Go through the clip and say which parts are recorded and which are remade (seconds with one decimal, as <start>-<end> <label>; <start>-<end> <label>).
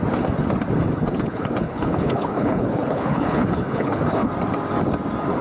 0.0-1.1 recorded; 1.1-4.3 remade; 4.3-5.4 recorded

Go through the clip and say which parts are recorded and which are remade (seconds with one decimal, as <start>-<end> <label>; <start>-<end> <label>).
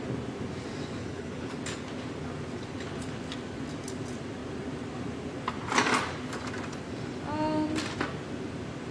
0.0-1.0 recorded; 1.0-1.5 remade; 1.5-8.9 recorded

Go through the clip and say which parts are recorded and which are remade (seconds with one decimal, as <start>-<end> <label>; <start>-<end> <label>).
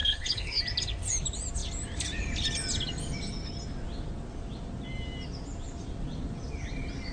0.0-0.6 remade; 0.6-7.1 recorded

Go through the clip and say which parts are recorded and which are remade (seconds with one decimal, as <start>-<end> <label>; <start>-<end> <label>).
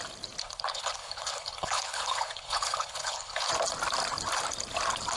0.0-0.4 recorded; 0.4-3.5 remade; 3.5-5.2 recorded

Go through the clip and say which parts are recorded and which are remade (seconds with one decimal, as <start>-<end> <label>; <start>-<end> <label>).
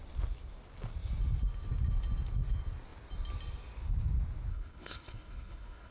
0.0-4.5 recorded; 4.5-5.9 remade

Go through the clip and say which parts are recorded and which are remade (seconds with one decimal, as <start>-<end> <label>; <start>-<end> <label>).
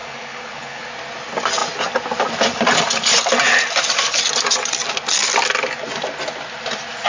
0.0-0.9 remade; 0.9-7.1 recorded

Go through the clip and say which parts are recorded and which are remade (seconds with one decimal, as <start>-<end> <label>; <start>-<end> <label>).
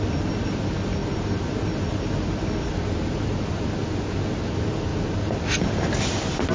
0.0-6.5 recorded